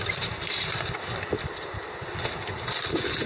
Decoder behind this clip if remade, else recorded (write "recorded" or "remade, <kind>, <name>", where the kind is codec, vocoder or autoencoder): recorded